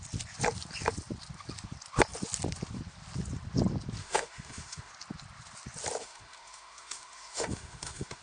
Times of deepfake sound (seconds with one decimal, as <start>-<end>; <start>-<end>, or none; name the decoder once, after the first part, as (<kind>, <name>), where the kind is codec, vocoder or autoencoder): 4.0-4.9 (autoencoder, DAC-VAE); 6.0-8.2